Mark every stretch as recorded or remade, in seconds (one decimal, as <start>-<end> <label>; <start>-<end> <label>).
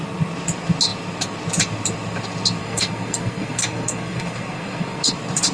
0.0-2.6 recorded; 2.6-5.1 remade; 5.1-5.5 recorded